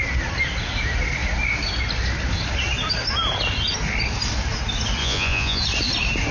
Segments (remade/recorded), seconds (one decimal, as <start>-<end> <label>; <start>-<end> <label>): 0.0-5.0 recorded; 5.0-5.6 remade; 5.6-6.3 recorded